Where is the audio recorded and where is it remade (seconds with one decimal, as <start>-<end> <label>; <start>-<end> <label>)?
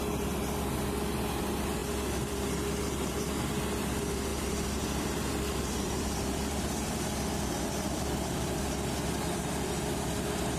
0.0-4.3 recorded; 4.3-8.6 remade; 8.6-10.6 recorded